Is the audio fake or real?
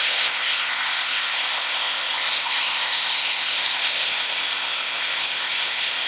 fake